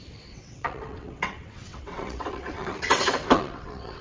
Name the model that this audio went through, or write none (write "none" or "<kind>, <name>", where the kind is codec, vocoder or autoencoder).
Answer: vocoder, WaveNeXt